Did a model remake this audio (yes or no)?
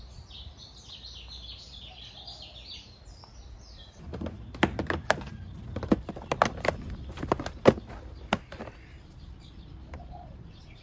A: no